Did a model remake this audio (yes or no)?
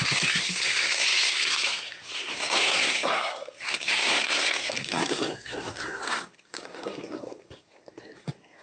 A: yes